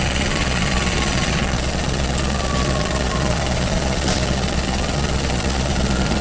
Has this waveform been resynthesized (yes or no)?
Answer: yes